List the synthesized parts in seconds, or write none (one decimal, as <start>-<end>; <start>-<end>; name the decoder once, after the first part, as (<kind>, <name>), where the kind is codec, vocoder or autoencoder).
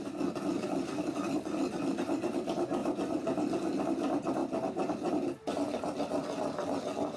none